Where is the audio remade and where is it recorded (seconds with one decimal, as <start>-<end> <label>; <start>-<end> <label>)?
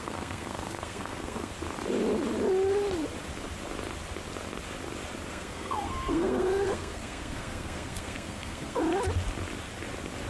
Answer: 0.0-1.5 remade; 1.5-5.3 recorded; 5.3-8.8 remade; 8.8-10.3 recorded